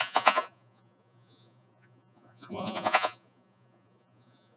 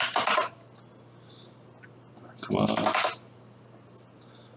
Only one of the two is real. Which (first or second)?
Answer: second